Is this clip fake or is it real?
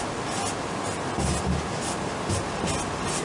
real